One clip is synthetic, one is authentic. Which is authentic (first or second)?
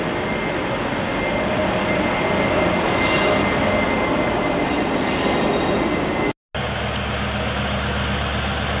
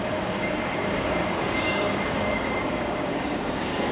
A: first